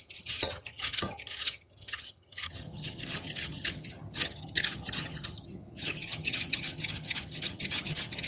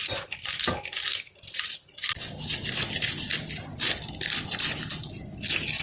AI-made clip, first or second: first